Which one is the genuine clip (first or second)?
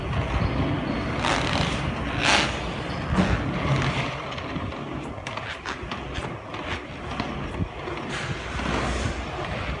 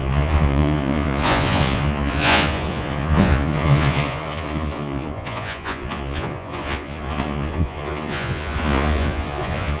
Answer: first